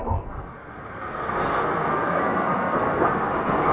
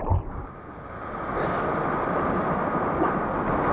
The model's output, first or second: first